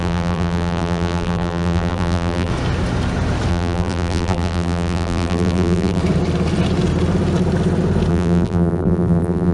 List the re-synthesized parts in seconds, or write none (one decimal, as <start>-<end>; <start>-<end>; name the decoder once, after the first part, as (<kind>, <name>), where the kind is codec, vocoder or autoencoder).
0.0-2.5 (vocoder, BigVGAN v2); 3.5-6.0; 8.1-9.5